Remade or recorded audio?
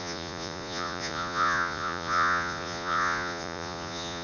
remade